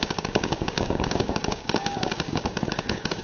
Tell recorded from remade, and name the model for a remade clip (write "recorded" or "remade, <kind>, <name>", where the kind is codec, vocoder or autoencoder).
remade, codec, DAC